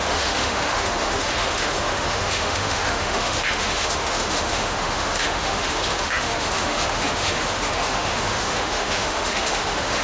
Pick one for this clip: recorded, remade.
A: remade